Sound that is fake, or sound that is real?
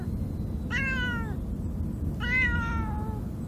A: real